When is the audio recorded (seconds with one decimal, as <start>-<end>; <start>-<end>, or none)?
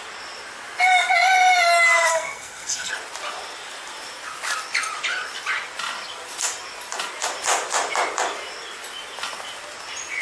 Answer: 0.0-2.1; 2.9-10.2